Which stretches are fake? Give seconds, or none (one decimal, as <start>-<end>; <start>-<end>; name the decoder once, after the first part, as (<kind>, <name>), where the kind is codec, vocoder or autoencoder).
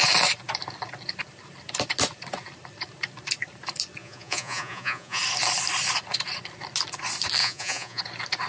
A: 4.0-5.2 (vocoder, Vocos); 7.4-8.0